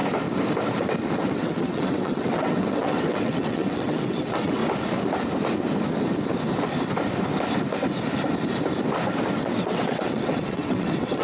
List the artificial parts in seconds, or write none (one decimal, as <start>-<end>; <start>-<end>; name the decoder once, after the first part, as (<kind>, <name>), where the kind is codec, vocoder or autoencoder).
1.1-4.6 (vocoder, WaveNeXt); 9.4-11.2